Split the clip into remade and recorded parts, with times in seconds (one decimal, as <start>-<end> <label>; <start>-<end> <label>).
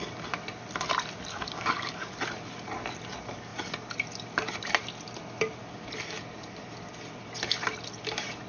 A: 0.0-1.3 recorded; 1.3-2.1 remade; 2.1-8.5 recorded